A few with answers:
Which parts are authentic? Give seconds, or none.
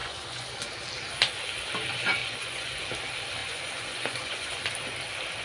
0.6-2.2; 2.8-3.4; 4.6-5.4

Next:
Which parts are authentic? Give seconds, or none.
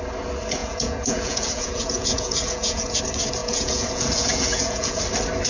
0.0-0.6; 3.0-3.4; 5.0-5.5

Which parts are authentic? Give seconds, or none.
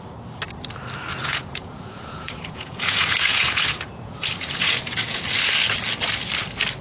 0.0-1.1; 5.2-6.8